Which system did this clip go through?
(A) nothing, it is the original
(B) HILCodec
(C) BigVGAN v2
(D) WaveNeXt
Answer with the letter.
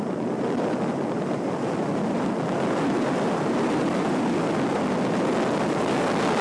A